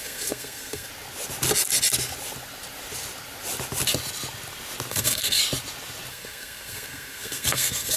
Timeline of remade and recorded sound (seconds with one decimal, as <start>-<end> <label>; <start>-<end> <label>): 0.0-0.9 remade; 0.9-4.9 recorded; 4.9-5.4 remade; 5.4-6.1 recorded; 6.1-8.0 remade